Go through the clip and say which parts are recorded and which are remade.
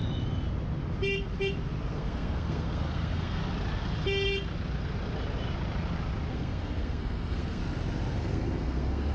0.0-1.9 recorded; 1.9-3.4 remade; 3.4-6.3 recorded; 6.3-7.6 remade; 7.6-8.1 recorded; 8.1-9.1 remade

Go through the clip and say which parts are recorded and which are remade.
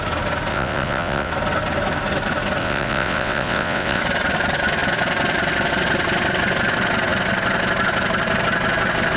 0.0-0.5 recorded; 0.5-1.3 remade; 1.3-2.6 recorded; 2.6-4.0 remade; 4.0-9.2 recorded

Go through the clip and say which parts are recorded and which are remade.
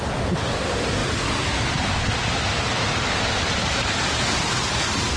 0.0-5.2 recorded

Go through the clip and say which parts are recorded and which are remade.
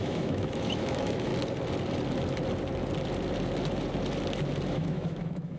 0.0-1.3 remade; 1.3-4.7 recorded; 4.7-5.6 remade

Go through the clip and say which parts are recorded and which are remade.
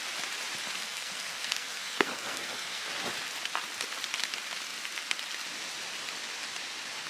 0.0-0.8 recorded; 0.8-2.9 remade; 2.9-7.1 recorded